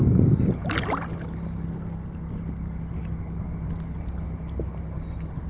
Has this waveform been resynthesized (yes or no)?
no